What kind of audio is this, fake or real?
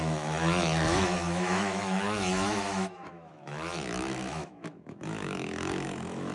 fake